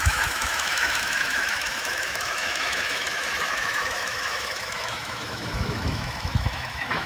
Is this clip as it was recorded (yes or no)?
no